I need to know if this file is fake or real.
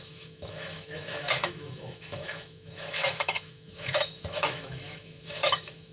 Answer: fake